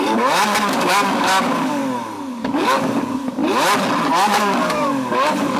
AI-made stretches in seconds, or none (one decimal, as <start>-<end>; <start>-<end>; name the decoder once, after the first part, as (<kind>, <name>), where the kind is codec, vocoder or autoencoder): 0.0-1.8 (codec, DAC); 2.3-3.4; 4.3-5.6